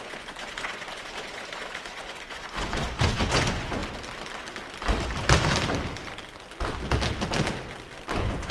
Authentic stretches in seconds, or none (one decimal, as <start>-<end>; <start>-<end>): 3.8-8.1